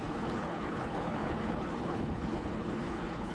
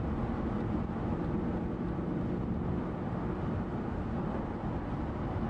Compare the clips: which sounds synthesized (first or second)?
first